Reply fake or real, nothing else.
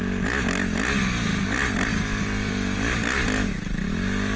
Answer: real